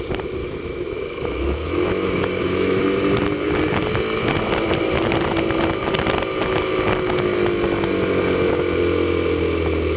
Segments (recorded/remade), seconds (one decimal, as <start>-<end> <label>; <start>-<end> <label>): 0.0-0.4 recorded; 0.4-2.8 remade; 2.8-10.0 recorded